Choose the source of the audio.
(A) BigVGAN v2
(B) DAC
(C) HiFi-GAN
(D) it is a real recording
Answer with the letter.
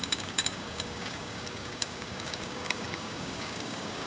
B